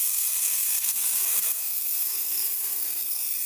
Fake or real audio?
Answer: fake